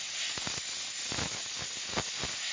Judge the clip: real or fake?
real